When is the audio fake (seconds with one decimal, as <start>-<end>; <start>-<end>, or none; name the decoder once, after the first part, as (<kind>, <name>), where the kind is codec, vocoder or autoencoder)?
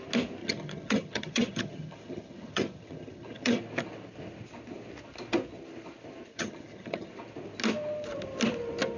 0.4-3.6 (vocoder, HiFi-GAN); 6.3-7.1